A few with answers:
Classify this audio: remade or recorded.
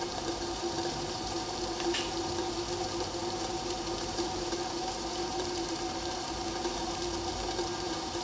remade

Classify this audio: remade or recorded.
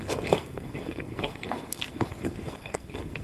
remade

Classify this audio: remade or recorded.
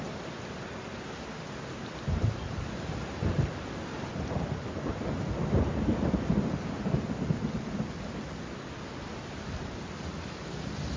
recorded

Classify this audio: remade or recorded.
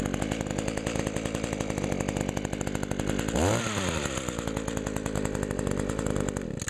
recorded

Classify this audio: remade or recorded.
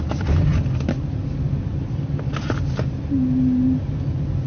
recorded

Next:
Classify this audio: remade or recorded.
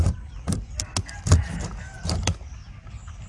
recorded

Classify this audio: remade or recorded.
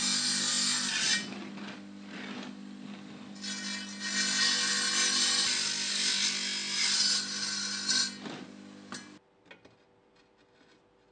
recorded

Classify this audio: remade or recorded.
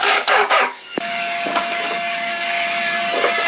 remade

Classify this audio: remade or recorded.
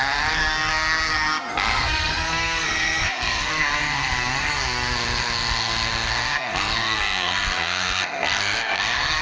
remade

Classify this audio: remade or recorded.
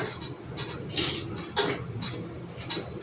recorded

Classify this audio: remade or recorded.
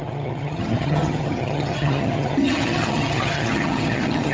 remade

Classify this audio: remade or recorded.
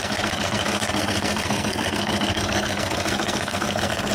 remade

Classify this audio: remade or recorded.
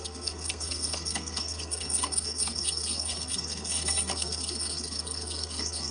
remade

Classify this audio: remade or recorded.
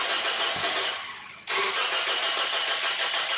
recorded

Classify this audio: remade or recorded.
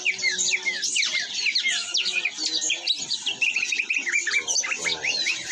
recorded